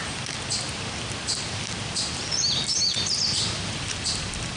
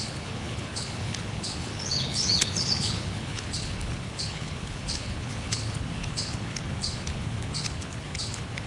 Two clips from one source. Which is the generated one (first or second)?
second